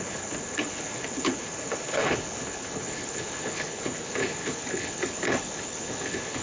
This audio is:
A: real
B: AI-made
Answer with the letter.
B